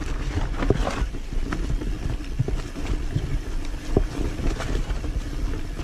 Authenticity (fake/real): real